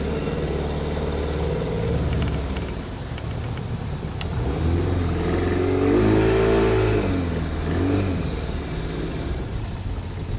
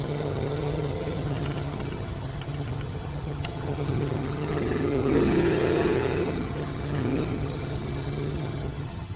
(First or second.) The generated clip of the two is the second